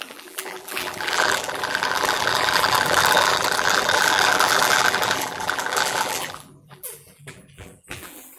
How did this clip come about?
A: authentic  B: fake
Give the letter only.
B